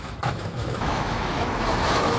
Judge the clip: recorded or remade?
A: remade